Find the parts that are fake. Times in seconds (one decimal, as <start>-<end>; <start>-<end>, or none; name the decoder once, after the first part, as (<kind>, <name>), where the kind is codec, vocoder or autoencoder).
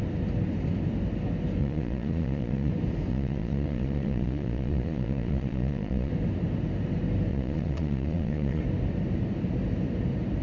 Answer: 1.6-2.7 (vocoder, Vocos); 3.1-6.1; 7.3-8.6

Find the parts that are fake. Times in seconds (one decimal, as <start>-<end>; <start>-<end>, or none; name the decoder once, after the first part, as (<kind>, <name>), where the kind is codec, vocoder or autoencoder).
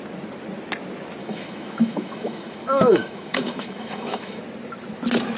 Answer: 1.2-4.4 (autoencoder, DAC-VAE)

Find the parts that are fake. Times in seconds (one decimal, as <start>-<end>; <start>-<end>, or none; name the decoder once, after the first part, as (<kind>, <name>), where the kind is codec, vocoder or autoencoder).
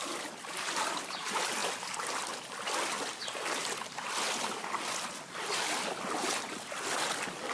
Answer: none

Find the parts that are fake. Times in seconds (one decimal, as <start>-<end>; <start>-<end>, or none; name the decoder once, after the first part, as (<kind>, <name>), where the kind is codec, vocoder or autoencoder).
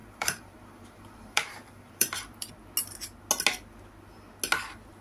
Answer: 0.0-2.5 (vocoder, BigVGAN v2)